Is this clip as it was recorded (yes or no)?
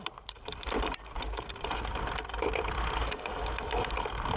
no